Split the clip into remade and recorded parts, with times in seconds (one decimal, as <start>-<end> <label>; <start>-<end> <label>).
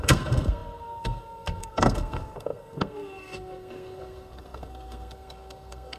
0.0-6.0 remade